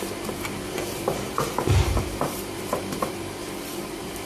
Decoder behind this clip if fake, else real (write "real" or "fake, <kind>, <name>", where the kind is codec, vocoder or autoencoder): fake, vocoder, BigVGAN v2